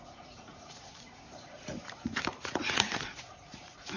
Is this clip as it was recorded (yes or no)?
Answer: no